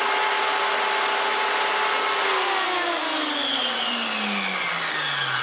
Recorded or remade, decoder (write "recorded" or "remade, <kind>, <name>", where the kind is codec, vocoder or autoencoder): recorded